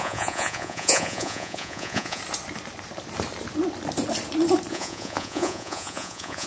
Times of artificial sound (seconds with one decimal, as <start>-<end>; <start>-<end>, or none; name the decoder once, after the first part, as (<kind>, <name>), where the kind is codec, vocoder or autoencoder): 0.0-2.2 (vocoder, Vocos); 4.7-6.5